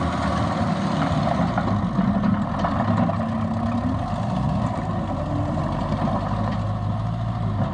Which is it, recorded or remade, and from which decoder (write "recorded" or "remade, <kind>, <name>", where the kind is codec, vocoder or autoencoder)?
recorded